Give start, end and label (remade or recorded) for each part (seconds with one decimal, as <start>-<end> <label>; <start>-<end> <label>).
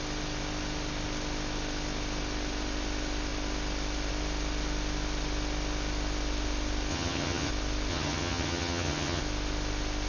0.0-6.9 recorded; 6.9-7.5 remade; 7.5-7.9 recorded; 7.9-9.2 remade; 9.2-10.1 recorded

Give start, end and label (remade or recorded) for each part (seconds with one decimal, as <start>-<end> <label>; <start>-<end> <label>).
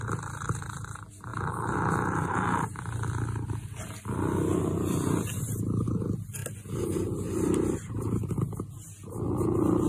0.0-9.9 recorded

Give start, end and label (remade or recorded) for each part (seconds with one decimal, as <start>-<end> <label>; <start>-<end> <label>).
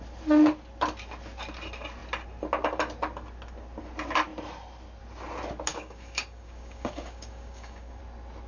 0.0-5.7 recorded; 5.7-8.0 remade; 8.0-8.5 recorded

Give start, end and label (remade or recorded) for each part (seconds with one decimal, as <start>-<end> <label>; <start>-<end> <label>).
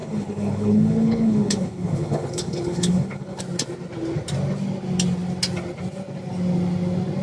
0.0-3.4 remade; 3.4-7.2 recorded